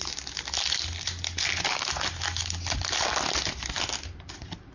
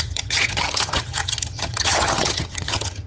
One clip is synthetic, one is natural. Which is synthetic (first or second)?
second